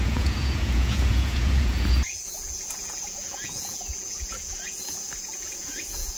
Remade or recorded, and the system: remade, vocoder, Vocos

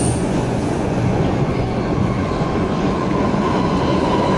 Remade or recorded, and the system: remade, vocoder, Vocos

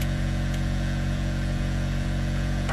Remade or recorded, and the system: remade, vocoder, Vocos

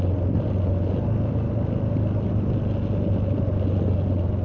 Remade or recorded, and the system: recorded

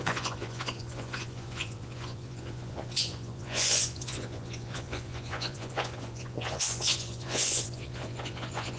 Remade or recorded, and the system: remade, vocoder, Vocos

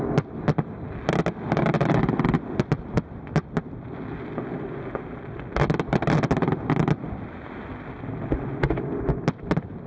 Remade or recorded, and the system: recorded